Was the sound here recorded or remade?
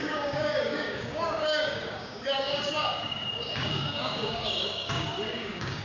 remade